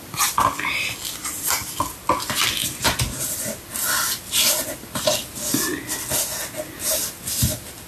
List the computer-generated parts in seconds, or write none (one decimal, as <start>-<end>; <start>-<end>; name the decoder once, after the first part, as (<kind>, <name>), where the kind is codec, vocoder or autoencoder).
none